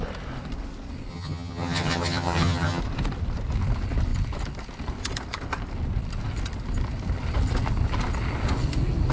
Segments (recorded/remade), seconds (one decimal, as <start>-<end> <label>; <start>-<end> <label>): 0.0-1.1 recorded; 1.1-2.8 remade; 2.8-9.1 recorded